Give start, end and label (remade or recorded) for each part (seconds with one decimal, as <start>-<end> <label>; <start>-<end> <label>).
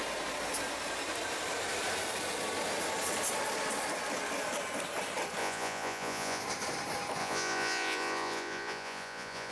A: 0.0-5.4 recorded; 5.4-6.4 remade; 6.4-7.2 recorded; 7.2-9.5 remade